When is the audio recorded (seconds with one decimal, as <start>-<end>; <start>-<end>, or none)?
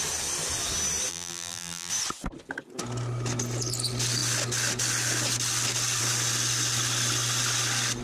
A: 0.0-1.1; 1.9-8.0